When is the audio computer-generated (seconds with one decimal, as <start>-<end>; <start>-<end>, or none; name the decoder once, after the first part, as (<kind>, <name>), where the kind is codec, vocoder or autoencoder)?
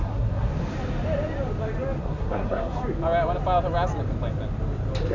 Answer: 0.0-0.5 (codec, SNAC); 2.0-2.8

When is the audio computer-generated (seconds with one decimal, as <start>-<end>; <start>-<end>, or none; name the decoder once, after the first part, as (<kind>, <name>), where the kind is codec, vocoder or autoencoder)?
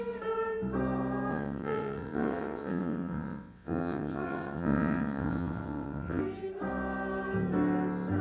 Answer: 1.3-6.2 (vocoder, WaveNeXt)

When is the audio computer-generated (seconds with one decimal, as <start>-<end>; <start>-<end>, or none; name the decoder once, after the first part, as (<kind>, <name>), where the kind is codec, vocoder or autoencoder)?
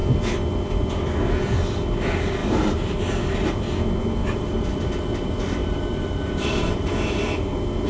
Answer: 2.4-3.2 (vocoder, BigVGAN v2); 4.2-4.7; 5.6-6.9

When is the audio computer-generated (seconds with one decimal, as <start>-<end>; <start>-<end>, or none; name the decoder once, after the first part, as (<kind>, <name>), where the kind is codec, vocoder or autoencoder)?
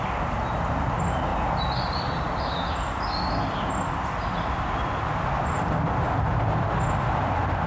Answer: none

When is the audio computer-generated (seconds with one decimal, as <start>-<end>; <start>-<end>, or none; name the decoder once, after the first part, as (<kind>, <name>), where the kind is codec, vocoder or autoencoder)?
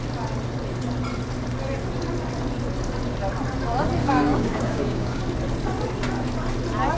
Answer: 4.0-5.2 (codec, DAC)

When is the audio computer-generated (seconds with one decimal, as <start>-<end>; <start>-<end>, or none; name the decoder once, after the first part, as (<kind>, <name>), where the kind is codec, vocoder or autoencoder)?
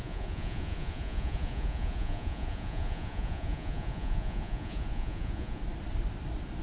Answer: 0.0-5.6 (vocoder, Vocos)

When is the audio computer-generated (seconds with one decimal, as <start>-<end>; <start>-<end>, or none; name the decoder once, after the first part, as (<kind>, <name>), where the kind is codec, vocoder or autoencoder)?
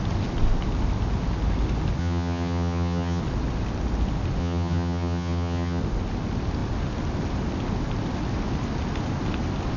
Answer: 2.0-3.2 (vocoder, HiFi-GAN); 4.4-5.8